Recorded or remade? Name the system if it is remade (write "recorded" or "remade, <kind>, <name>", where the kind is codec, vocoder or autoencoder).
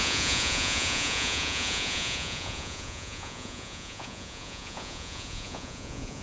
remade, vocoder, Vocos